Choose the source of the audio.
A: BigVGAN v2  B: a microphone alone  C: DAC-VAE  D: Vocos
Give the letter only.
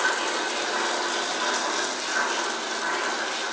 B